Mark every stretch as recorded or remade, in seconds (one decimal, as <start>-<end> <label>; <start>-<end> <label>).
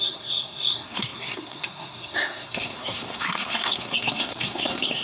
0.0-5.0 remade